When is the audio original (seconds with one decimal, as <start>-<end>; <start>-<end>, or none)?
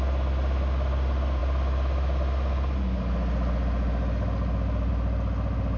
0.0-5.8